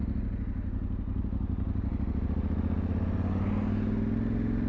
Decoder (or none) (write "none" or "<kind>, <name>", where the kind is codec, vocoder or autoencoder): none